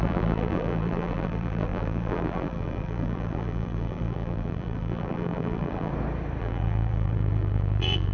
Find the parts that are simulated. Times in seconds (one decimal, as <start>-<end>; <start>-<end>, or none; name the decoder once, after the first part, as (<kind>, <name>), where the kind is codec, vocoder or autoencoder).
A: 0.0-5.9 (vocoder, BigVGAN v2); 6.4-8.1